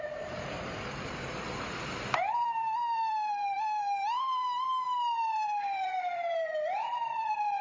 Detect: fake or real fake